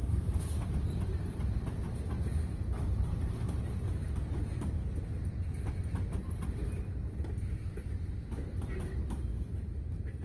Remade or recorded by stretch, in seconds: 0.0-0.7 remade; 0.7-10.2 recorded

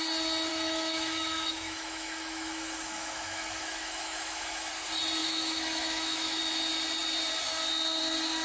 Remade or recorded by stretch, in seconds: 0.0-0.5 recorded; 0.5-4.7 remade; 4.7-5.2 recorded; 5.2-6.4 remade; 6.4-8.4 recorded

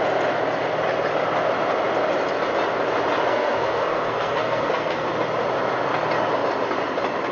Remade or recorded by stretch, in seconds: 0.0-3.3 recorded; 3.3-5.1 remade; 5.1-7.3 recorded

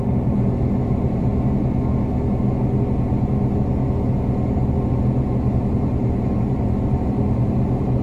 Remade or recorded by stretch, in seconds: 0.0-1.3 remade; 1.3-5.7 recorded; 5.7-8.0 remade

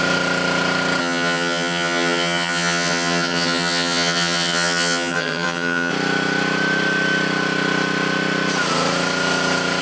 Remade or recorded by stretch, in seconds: 0.0-1.0 recorded; 1.0-5.9 remade; 5.9-9.8 recorded